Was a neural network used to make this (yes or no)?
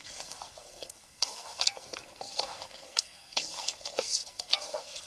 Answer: yes